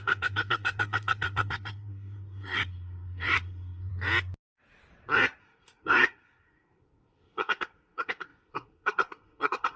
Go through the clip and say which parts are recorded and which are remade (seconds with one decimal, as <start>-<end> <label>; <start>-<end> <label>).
0.0-3.9 remade; 3.9-5.4 recorded; 5.4-9.8 remade